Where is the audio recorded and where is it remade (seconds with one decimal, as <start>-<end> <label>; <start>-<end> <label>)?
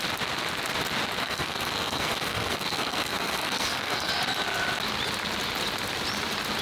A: 0.0-1.2 recorded; 1.2-4.1 remade; 4.1-6.6 recorded